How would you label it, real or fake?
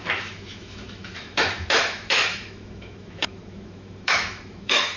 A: fake